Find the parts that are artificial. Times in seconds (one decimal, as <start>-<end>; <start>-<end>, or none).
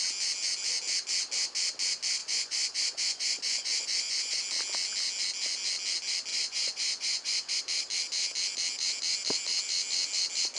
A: 2.2-4.4; 6.3-7.6